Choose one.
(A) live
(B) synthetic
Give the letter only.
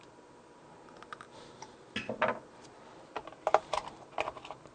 A